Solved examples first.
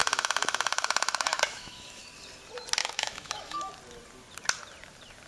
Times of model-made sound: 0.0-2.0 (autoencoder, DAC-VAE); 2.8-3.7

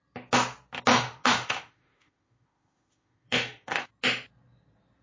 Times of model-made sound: 0.9-3.9 (autoencoder, DAC-VAE)